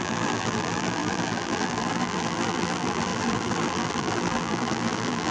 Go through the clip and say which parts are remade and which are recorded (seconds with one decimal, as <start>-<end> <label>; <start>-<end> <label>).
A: 0.0-5.3 remade